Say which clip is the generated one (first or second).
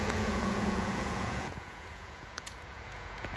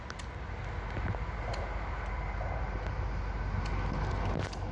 first